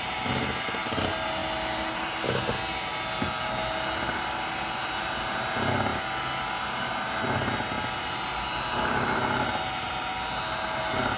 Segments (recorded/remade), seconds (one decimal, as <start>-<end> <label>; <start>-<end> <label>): 0.0-11.2 recorded